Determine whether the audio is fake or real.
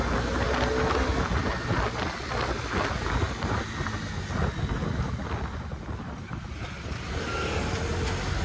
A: real